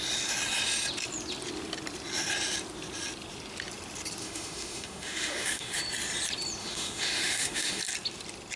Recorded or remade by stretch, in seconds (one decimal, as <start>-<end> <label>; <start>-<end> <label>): 0.0-4.2 recorded; 4.2-5.8 remade; 5.8-6.6 recorded; 6.6-7.8 remade; 7.8-8.6 recorded